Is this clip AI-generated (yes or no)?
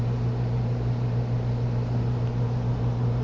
no